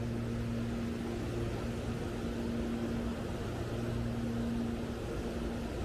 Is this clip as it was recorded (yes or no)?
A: yes